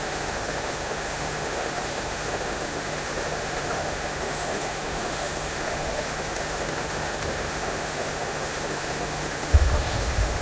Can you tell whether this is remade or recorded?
remade